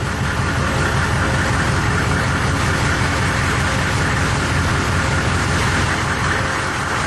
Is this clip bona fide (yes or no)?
yes